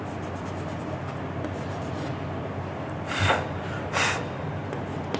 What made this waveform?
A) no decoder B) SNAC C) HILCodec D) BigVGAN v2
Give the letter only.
A